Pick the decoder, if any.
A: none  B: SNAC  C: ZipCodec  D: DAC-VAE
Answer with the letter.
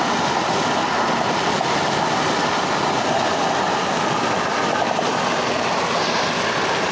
A